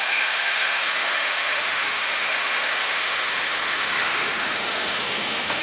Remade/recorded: remade